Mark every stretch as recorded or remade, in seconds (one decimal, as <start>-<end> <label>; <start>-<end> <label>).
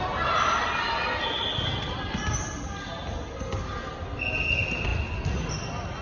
0.0-6.0 recorded